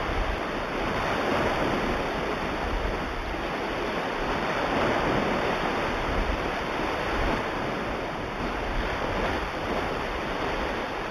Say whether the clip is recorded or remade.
recorded